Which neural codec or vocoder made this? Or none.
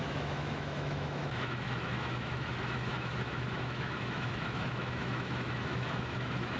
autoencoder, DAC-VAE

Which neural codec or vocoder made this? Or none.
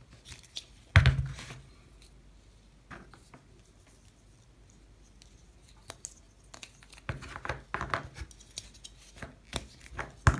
none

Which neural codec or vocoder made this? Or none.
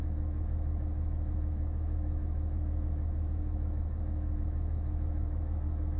autoencoder, DAC-VAE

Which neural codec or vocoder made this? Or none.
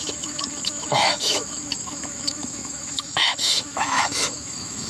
autoencoder, DAC-VAE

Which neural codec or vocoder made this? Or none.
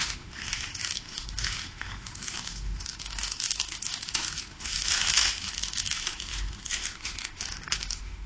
autoencoder, DAC-VAE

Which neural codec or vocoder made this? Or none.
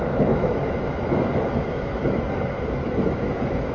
autoencoder, DAC-VAE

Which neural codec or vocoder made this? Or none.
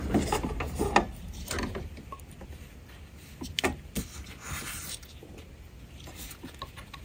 none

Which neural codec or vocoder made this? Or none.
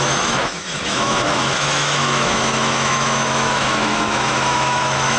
autoencoder, DAC-VAE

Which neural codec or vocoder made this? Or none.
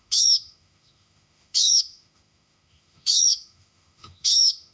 autoencoder, DAC-VAE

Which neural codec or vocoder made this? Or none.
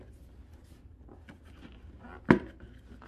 none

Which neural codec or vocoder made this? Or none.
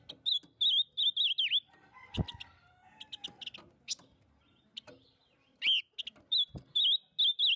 none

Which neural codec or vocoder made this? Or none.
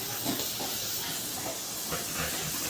none